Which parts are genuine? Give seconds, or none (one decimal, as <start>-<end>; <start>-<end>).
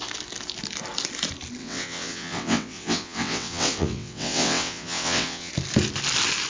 0.0-1.6; 5.5-6.5